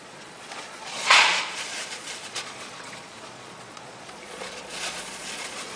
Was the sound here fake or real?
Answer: fake